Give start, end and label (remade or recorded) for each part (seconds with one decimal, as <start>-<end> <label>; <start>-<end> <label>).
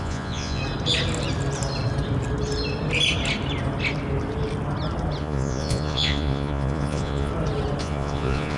0.0-0.6 remade; 0.6-5.2 recorded; 5.2-7.3 remade; 7.3-7.8 recorded; 7.8-8.6 remade